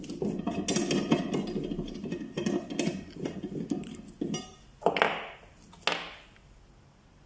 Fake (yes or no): no